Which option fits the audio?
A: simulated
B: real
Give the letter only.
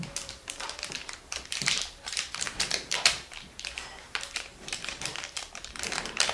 A